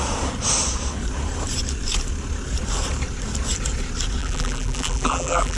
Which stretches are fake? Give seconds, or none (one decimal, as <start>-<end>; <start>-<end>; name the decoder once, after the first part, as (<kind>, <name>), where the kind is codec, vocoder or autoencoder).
4.2-5.6 (vocoder, BigVGAN v2)